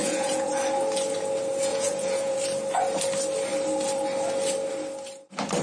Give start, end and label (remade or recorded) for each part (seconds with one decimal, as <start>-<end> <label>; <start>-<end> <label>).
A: 0.0-0.5 remade; 0.5-1.7 recorded; 1.7-2.4 remade; 2.4-5.6 recorded